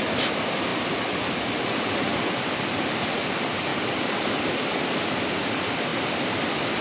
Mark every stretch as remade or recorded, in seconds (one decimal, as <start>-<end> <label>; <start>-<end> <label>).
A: 0.0-6.8 recorded